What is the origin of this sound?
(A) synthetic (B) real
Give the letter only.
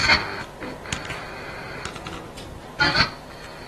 B